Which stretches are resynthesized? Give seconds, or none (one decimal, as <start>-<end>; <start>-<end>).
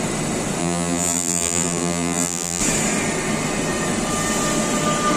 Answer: 0.6-2.6